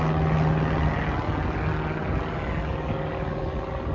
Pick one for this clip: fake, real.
real